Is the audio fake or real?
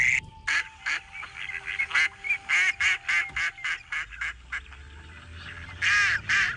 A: real